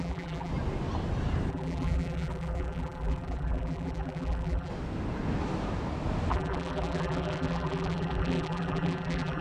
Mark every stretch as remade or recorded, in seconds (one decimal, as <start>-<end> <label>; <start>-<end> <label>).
0.0-0.5 remade; 0.5-1.5 recorded; 1.5-4.7 remade; 4.7-6.3 recorded; 6.3-9.4 remade